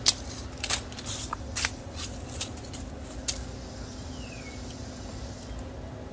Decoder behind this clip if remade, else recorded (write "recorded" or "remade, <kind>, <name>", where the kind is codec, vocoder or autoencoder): recorded